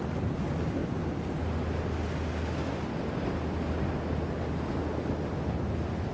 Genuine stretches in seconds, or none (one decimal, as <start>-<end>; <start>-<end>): 0.0-6.1